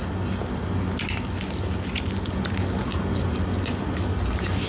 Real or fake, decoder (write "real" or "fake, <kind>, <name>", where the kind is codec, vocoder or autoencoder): real